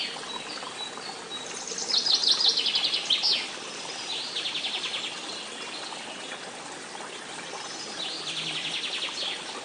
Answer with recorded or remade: recorded